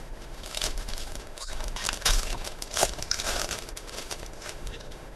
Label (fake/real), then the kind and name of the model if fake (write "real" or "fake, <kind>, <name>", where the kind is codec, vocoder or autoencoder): fake, autoencoder, DAC-VAE